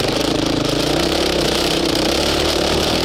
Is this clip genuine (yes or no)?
no